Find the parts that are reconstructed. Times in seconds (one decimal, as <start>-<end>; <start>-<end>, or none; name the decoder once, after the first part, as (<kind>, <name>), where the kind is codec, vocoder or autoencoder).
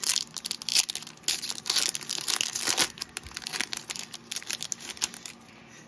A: none